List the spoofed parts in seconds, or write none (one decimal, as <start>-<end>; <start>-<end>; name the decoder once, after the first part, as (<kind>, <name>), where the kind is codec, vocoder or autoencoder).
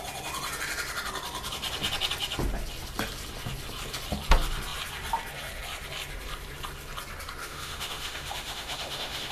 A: 7.4-9.3 (autoencoder, DAC-VAE)